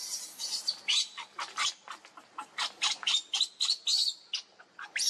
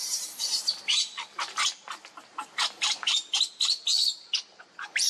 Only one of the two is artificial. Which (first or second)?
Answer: second